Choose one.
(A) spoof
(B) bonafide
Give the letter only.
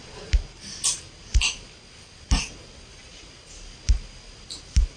B